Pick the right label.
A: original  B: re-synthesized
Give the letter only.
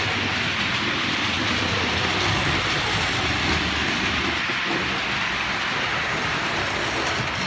A